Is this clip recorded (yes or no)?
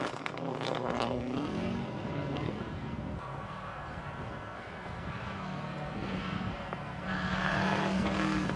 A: no